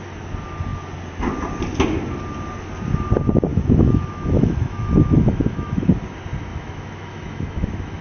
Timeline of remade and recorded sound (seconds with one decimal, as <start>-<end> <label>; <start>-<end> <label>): 0.0-3.5 recorded; 3.5-5.8 remade; 5.8-6.5 recorded; 6.5-8.0 remade